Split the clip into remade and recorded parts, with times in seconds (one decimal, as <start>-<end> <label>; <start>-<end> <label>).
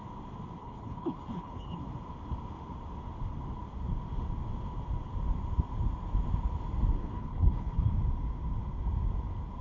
0.0-0.6 recorded; 0.6-1.8 remade; 1.8-7.0 recorded; 7.0-7.9 remade; 7.9-9.6 recorded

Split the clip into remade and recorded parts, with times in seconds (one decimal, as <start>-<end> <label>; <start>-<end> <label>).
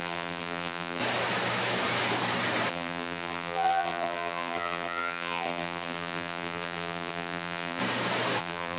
0.0-1.0 remade; 1.0-2.7 recorded; 2.7-7.8 remade; 7.8-8.4 recorded; 8.4-8.8 remade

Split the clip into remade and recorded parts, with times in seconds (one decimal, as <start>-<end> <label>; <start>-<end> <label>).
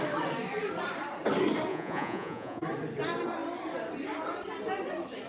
0.0-1.7 recorded; 1.7-2.6 remade; 2.6-5.3 recorded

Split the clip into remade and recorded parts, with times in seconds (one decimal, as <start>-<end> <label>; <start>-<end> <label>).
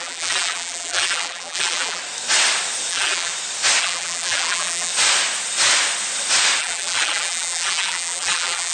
0.0-2.0 remade; 2.0-2.9 recorded; 2.9-3.3 remade; 3.3-3.8 recorded; 3.8-4.9 remade; 4.9-6.6 recorded; 6.6-8.7 remade